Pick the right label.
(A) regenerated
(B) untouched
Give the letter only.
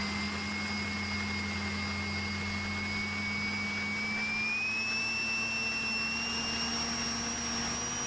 B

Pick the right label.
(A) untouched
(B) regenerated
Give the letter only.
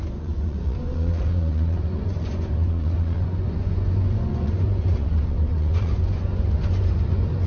B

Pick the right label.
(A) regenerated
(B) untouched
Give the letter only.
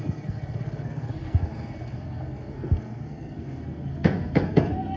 A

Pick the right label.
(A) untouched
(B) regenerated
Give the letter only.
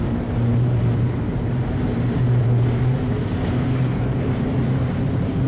B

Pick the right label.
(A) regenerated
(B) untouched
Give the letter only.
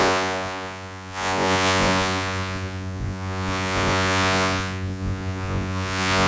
A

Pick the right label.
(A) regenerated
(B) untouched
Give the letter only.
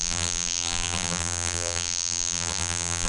A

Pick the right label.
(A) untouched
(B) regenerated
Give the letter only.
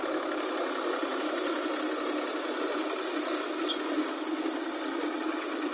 A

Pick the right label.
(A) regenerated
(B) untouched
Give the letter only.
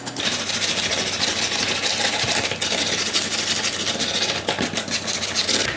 B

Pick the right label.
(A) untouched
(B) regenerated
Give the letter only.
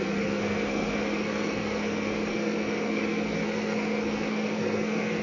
B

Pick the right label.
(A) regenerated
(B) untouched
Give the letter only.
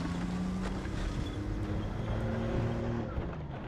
B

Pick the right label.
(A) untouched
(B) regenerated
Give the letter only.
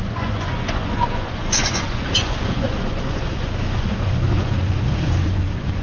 B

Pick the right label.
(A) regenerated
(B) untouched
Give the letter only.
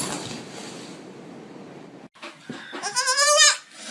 B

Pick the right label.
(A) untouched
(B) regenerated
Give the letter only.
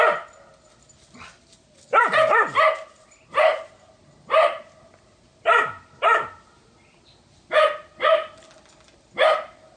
A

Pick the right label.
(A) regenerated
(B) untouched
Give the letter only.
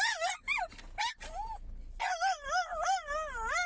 B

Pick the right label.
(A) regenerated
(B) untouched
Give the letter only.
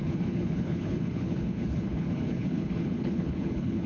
A